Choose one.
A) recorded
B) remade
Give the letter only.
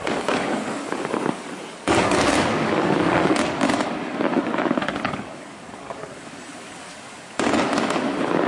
B